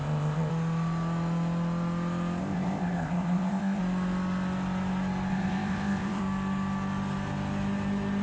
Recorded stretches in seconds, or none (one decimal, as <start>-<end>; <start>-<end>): 0.5-2.4; 3.8-5.3; 6.2-8.2